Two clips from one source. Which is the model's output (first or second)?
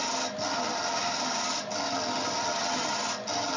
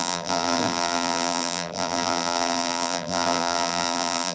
second